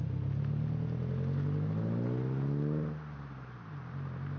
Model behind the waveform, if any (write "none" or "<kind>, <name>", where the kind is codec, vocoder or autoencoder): none